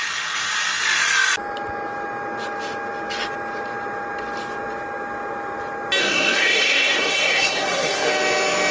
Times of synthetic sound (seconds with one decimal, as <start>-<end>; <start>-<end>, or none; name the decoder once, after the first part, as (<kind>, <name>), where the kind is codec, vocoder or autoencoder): 6.0-8.1 (codec, SNAC)